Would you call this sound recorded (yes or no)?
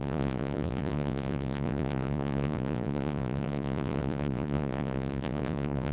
no